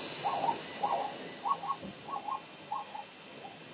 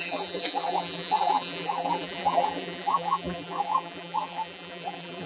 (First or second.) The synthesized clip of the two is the second